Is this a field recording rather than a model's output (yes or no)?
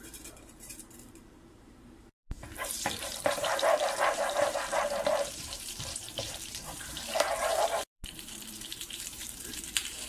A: no